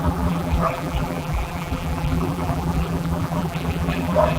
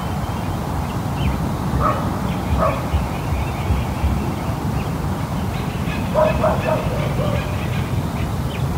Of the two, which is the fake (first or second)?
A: first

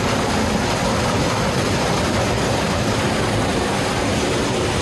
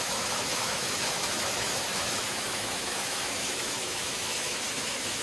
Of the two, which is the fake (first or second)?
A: second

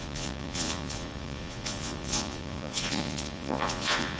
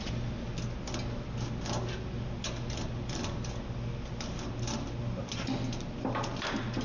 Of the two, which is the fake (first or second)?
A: first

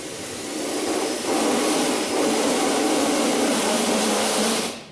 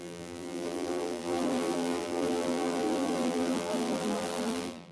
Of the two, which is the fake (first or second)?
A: second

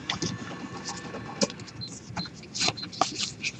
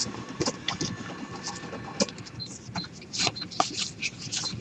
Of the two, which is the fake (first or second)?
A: second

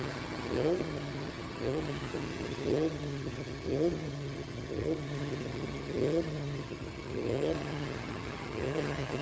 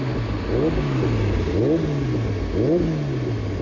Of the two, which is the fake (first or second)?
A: first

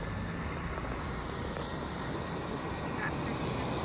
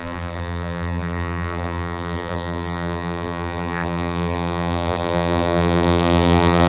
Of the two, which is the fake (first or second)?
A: second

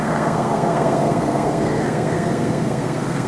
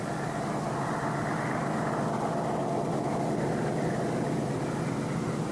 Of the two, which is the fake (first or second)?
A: first